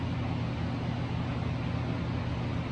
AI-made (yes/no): no